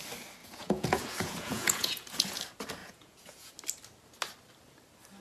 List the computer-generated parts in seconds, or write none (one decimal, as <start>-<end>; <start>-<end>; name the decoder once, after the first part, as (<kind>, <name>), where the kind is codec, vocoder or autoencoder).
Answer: 0.4-2.4 (vocoder, Vocos); 2.8-3.5